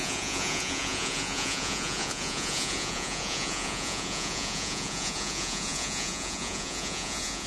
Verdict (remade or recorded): remade